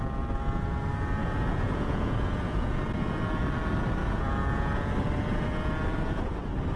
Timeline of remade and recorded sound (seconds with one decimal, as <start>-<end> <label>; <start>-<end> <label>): 0.0-1.2 recorded; 1.2-2.7 remade; 2.7-4.0 recorded; 4.0-4.7 remade; 4.7-6.8 recorded